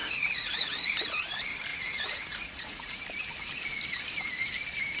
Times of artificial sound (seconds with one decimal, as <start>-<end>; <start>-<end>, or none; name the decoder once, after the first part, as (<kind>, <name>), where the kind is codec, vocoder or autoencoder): 0.0-0.7 (vocoder, Vocos); 1.7-3.0